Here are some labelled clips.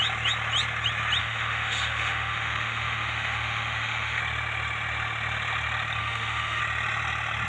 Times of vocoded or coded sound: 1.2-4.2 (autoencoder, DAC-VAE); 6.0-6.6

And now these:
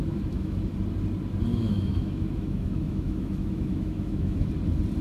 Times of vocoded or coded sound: 0.0-0.7 (autoencoder, DAC-VAE); 1.5-4.5